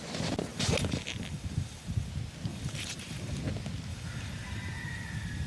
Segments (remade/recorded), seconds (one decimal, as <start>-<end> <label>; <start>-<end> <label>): 0.0-0.5 recorded; 0.5-2.1 remade; 2.1-2.5 recorded; 2.5-3.4 remade; 3.4-3.9 recorded; 3.9-5.5 remade

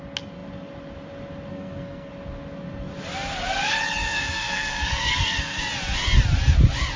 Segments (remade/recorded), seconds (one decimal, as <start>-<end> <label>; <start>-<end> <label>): 0.0-1.5 recorded; 1.5-2.1 remade; 2.1-4.0 recorded; 4.0-5.6 remade; 5.6-7.0 recorded

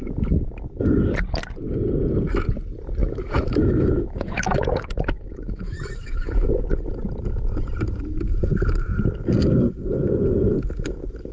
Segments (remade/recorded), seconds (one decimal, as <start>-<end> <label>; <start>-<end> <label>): 0.0-3.0 recorded; 3.0-6.5 remade; 6.5-11.3 recorded

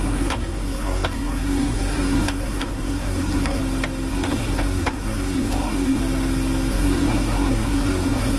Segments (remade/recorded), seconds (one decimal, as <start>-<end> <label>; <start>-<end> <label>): 0.0-3.6 remade; 3.6-4.1 recorded; 4.1-6.0 remade; 6.0-6.7 recorded; 6.7-8.4 remade

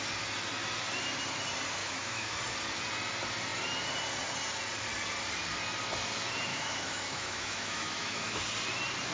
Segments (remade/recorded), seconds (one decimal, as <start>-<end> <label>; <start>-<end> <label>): 0.0-1.8 recorded; 1.8-2.4 remade; 2.4-6.5 recorded; 6.5-8.4 remade; 8.4-9.1 recorded

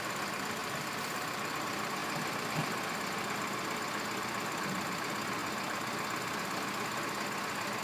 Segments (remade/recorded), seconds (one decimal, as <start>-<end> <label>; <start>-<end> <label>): 0.0-0.6 recorded; 0.6-1.5 remade; 1.5-7.8 recorded

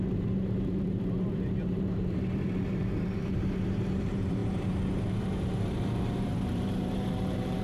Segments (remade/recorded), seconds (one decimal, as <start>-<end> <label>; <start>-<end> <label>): 0.0-7.6 remade

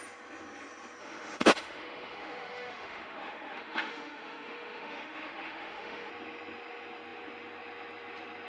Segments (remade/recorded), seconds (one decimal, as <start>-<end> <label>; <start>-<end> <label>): 0.0-1.0 recorded; 1.0-6.1 remade; 6.1-8.5 recorded